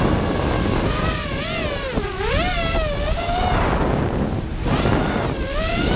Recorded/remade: recorded